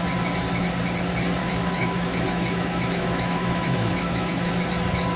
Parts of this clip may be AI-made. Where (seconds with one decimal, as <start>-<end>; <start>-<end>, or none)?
1.4-4.5